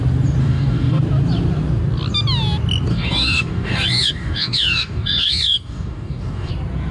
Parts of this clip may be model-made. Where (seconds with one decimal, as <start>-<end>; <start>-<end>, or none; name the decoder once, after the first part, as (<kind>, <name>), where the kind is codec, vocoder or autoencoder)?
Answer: 0.4-1.0 (codec, DAC); 2.9-6.5